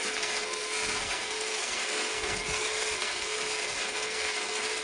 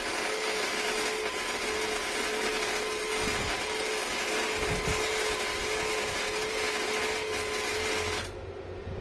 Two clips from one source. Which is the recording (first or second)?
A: second